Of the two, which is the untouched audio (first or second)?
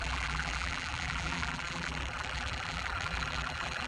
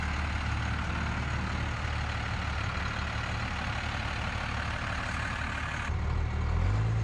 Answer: second